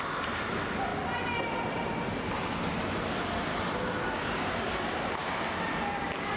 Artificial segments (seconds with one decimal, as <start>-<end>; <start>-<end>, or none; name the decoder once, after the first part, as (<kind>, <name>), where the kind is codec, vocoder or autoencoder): none